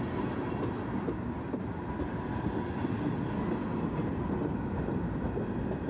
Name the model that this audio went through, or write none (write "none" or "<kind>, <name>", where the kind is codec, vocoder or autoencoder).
none